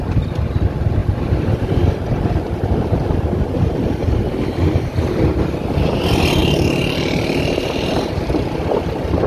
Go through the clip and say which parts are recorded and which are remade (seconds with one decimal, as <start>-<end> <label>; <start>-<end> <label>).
0.0-6.4 recorded; 6.4-8.1 remade; 8.1-9.3 recorded